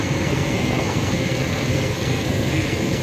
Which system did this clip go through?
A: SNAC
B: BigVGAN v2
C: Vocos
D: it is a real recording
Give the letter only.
A